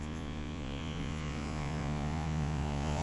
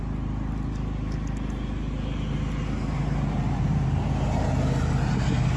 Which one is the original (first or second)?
second